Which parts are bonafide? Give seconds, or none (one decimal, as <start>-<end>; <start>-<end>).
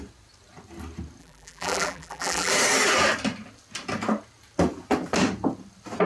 0.0-1.2; 2.5-6.0